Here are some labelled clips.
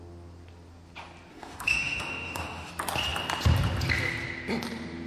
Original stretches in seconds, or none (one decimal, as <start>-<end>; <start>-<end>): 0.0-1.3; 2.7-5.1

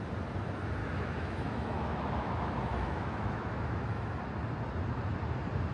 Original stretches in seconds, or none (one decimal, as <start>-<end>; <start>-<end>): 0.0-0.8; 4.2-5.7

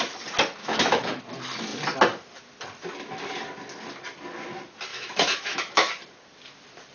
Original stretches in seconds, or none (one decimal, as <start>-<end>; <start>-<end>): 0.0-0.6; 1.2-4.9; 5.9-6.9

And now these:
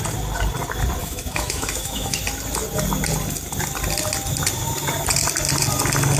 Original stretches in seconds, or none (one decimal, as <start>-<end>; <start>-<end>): 0.0-1.0; 2.2-6.2